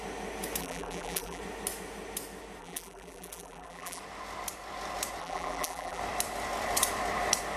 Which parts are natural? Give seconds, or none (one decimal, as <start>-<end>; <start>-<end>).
0.0-0.6; 1.4-2.6; 4.0-5.2; 6.0-7.6